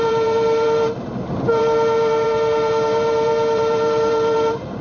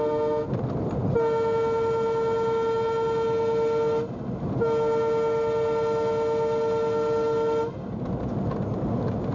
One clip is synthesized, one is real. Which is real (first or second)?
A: second